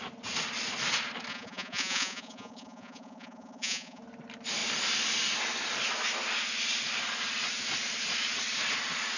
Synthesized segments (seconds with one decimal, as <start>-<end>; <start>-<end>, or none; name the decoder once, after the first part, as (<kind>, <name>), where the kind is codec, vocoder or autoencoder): 1.3-4.0 (vocoder, Vocos)